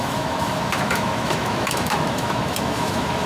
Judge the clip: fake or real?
fake